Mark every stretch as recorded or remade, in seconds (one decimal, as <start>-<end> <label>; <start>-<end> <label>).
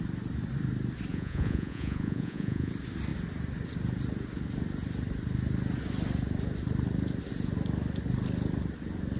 0.0-1.1 recorded; 1.1-2.7 remade; 2.7-9.2 recorded